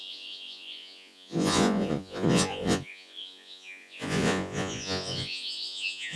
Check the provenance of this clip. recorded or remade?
remade